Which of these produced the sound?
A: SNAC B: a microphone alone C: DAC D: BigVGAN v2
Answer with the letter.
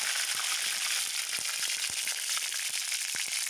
B